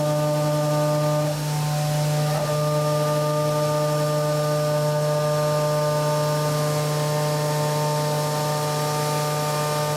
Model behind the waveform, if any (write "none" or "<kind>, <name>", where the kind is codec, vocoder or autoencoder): none